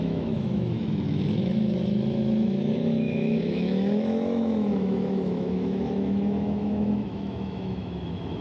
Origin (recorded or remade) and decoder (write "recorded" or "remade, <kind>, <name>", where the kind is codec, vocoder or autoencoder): remade, autoencoder, DAC-VAE